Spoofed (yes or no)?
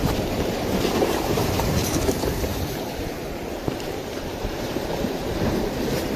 yes